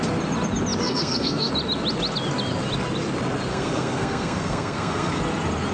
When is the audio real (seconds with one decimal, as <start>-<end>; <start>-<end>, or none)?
0.0-0.8; 1.5-3.5; 5.2-5.7